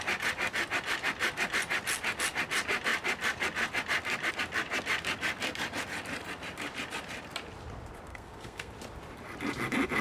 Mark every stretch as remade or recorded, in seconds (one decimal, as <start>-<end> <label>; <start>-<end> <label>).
0.0-8.1 recorded; 8.1-8.7 remade; 8.7-10.0 recorded